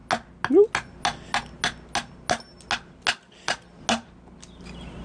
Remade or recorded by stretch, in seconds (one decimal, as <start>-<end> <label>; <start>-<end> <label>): 0.0-5.0 recorded